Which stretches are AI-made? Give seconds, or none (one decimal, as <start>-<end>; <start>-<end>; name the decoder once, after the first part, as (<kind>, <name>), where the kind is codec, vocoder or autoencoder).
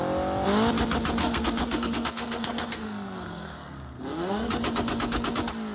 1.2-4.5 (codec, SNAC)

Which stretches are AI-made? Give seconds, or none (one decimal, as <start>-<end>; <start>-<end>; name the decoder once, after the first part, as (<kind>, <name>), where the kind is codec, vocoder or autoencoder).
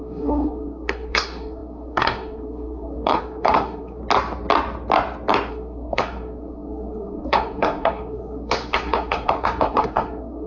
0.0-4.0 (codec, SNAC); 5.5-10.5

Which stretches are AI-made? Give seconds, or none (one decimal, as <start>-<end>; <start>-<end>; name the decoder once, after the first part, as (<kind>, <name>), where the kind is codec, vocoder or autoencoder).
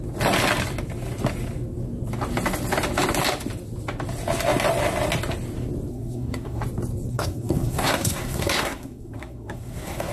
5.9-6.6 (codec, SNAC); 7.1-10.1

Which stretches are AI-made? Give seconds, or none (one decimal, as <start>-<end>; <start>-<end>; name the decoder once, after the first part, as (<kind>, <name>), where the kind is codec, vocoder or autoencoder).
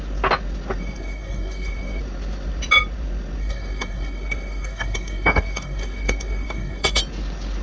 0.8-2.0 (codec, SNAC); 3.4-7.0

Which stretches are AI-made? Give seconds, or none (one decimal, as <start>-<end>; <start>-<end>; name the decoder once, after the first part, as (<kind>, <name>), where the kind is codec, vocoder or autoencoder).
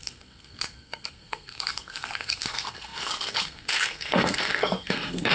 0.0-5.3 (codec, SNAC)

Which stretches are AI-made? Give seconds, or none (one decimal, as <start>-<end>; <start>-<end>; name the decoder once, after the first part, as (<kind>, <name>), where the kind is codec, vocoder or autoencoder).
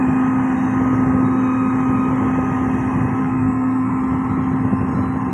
3.2-3.9 (codec, SNAC)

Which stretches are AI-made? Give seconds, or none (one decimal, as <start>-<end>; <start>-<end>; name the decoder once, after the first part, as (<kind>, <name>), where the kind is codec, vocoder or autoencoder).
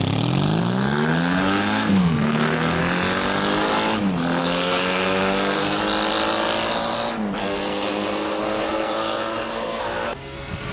0.6-2.8 (codec, SNAC); 4.4-5.8; 7.4-10.7